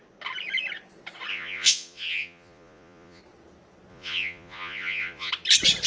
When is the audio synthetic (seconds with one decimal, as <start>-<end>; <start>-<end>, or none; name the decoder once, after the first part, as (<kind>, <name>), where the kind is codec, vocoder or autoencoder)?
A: 1.3-3.2 (vocoder, Vocos); 3.9-5.3